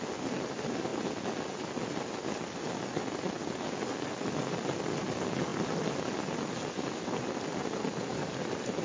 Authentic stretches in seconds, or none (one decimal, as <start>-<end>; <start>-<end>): 0.0-8.8